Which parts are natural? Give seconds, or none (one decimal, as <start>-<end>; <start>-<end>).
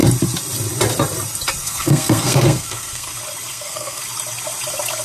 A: 0.0-1.6; 3.1-3.5; 4.0-5.0